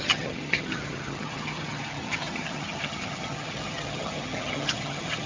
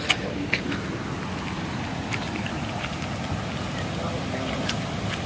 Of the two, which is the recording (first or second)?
second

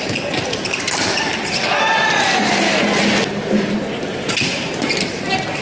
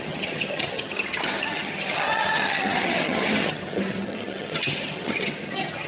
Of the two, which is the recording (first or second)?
first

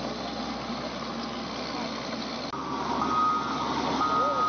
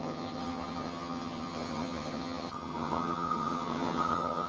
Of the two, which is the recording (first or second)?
first